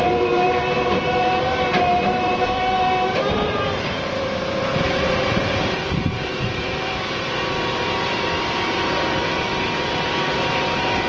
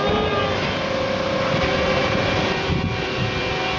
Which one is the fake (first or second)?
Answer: first